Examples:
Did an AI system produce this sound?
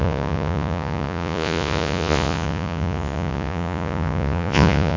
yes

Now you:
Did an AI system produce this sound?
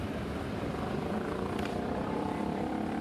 yes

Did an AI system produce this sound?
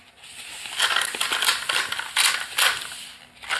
no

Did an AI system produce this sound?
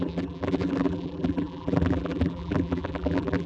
yes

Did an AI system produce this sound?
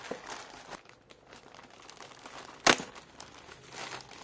no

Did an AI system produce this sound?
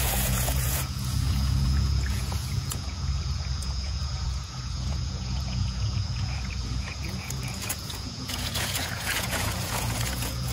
yes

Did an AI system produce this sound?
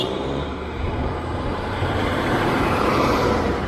yes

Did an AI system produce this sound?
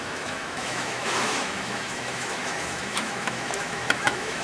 yes